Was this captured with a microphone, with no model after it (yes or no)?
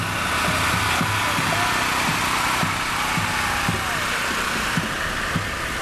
yes